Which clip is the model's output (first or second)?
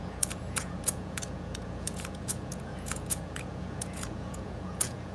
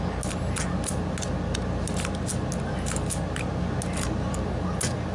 first